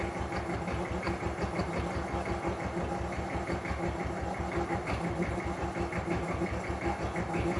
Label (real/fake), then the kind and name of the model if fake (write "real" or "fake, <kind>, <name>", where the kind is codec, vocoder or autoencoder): real